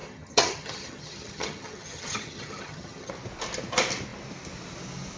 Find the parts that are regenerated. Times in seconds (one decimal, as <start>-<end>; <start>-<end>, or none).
0.0-3.1